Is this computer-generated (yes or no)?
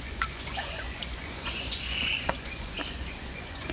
yes